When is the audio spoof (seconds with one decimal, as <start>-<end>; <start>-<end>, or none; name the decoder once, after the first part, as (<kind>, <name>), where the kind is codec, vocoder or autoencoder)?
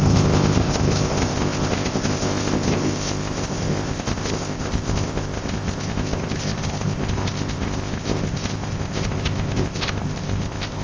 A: 0.0-10.8 (codec, ZipCodec)